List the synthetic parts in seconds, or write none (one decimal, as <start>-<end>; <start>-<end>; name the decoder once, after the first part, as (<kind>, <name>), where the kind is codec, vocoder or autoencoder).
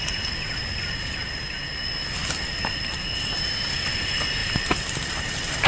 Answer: none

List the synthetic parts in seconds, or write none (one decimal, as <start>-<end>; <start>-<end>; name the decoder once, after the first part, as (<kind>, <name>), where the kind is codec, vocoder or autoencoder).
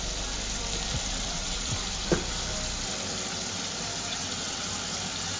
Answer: 1.1-1.8 (vocoder, WaveNeXt); 4.1-4.7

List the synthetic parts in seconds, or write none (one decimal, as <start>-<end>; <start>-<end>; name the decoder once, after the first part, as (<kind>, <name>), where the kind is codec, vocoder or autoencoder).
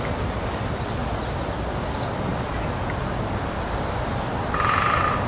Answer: 0.0-1.0 (vocoder, BigVGAN v2); 3.9-5.3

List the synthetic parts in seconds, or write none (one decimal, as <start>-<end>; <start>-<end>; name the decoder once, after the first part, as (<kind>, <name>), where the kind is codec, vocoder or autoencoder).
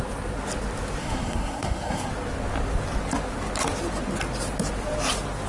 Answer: 1.0-2.1 (codec, SNAC)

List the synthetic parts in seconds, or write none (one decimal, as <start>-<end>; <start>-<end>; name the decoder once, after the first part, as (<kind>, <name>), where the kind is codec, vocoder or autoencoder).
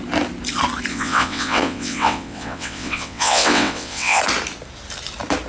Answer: 0.9-4.2 (vocoder, WaveNeXt)